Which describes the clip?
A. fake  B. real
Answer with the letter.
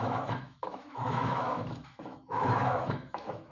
A